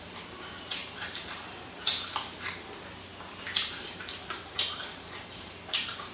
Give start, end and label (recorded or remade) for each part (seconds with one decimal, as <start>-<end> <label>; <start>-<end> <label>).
0.0-6.1 remade